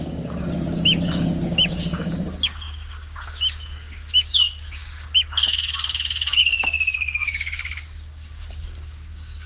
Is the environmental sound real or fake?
fake